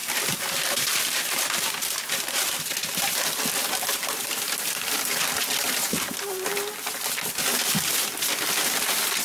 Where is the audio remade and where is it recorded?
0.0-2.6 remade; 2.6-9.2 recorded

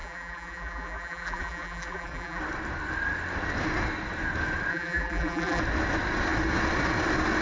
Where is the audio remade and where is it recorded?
0.0-2.4 remade; 2.4-4.7 recorded; 4.7-5.6 remade; 5.6-7.4 recorded

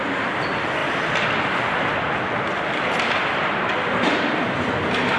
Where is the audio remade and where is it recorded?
0.0-5.2 recorded

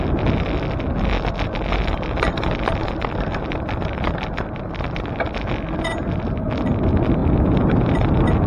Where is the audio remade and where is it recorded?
0.0-8.5 recorded

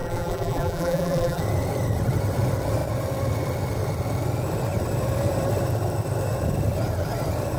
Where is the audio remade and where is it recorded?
0.0-1.4 remade; 1.4-7.6 recorded

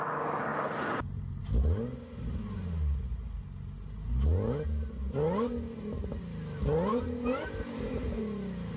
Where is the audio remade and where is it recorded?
0.0-0.5 recorded; 0.5-1.4 remade; 1.4-6.9 recorded; 6.9-8.2 remade; 8.2-8.8 recorded